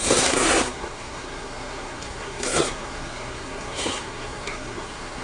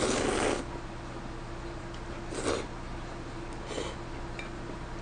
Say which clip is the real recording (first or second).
second